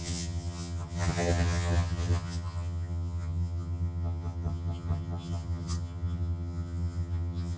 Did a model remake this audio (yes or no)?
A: yes